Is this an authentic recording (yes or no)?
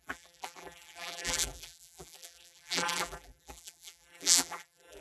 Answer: no